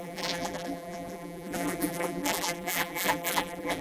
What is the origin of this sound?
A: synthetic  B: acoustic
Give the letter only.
A